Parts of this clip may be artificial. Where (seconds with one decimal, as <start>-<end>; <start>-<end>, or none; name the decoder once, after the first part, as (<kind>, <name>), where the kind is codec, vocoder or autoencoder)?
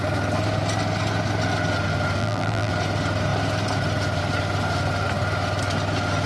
2.2-2.7 (vocoder, BigVGAN v2)